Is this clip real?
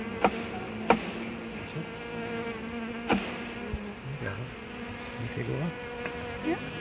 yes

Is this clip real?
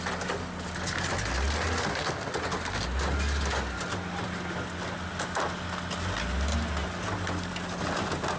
yes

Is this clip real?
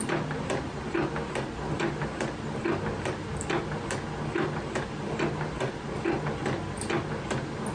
yes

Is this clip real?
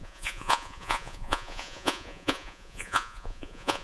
no